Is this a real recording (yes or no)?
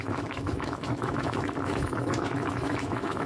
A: no